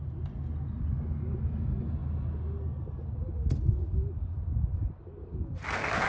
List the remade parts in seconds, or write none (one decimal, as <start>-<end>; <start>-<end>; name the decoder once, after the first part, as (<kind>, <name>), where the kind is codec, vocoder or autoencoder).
none